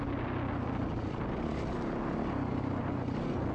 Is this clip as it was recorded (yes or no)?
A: yes